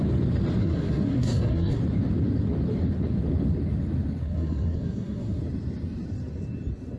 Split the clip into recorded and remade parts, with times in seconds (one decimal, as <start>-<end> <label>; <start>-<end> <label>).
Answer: 0.0-0.6 recorded; 0.6-1.8 remade; 1.8-4.2 recorded; 4.2-5.4 remade; 5.4-7.0 recorded